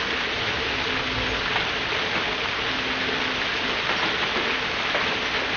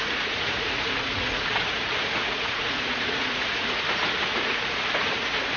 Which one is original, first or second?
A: first